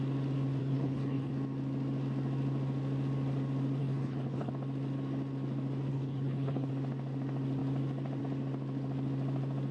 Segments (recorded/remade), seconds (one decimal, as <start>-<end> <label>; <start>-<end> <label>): 0.0-0.6 recorded; 0.6-1.3 remade; 1.3-3.8 recorded; 3.8-4.5 remade; 4.5-5.9 recorded; 5.9-6.7 remade; 6.7-9.7 recorded